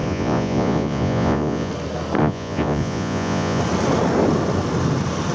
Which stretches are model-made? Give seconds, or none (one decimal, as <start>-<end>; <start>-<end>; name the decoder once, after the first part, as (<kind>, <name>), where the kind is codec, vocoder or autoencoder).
0.0-1.7 (vocoder, Vocos); 2.2-3.6